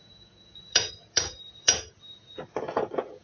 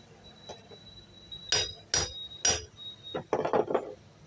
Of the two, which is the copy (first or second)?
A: first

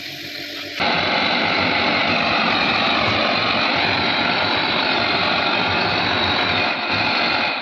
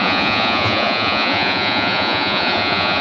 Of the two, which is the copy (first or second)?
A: second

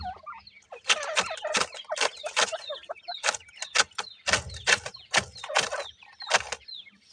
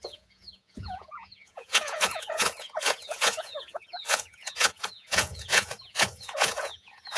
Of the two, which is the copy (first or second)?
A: second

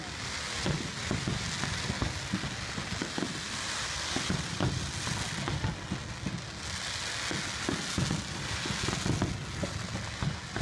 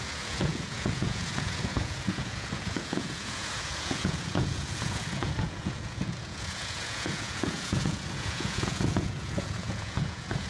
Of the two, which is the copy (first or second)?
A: second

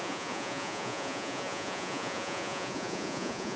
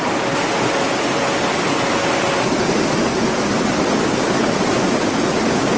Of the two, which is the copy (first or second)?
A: first